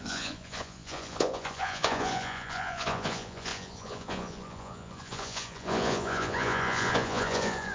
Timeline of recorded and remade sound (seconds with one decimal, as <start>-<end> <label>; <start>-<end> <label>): 0.0-7.7 remade